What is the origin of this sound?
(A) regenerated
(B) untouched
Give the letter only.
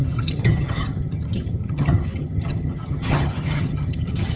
A